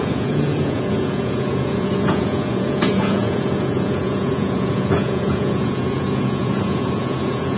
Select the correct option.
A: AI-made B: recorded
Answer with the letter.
A